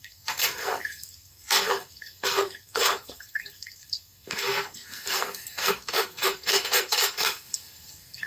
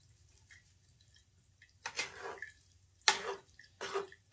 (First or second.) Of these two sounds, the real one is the second